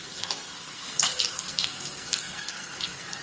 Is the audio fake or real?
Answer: fake